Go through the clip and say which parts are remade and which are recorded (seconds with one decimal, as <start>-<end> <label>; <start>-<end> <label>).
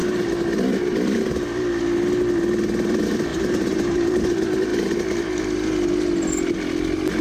0.0-3.3 recorded; 3.3-4.2 remade; 4.2-7.2 recorded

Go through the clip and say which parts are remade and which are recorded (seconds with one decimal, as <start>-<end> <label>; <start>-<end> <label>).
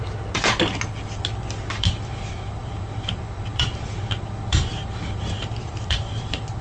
0.0-0.4 remade; 0.4-1.6 recorded; 1.6-6.6 remade